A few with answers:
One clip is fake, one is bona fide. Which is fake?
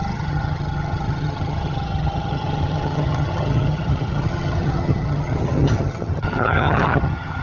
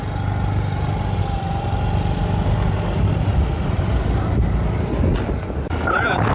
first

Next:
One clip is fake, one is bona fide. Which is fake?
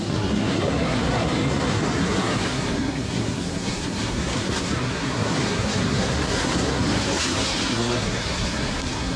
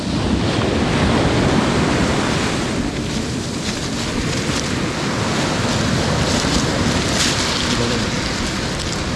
first